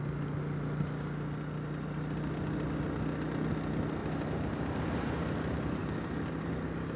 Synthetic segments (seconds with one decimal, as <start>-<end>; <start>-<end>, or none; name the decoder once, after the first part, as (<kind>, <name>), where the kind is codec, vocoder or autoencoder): 4.0-5.1 (vocoder, BigVGAN v2); 5.8-6.5